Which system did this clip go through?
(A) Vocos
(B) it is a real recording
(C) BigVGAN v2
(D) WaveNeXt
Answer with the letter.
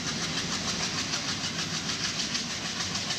B